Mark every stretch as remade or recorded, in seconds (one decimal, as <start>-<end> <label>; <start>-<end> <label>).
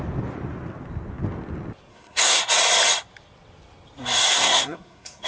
0.0-1.9 recorded; 1.9-2.4 remade; 2.4-4.3 recorded; 4.3-5.3 remade